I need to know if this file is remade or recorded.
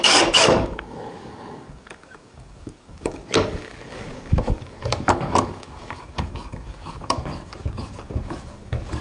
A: remade